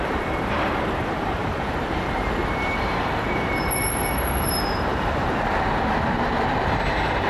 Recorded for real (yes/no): no